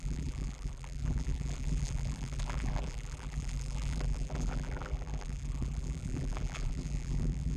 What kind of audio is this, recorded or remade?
remade